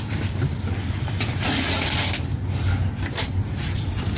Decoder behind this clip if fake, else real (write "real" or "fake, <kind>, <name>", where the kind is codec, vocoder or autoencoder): real